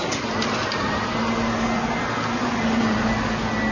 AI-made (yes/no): no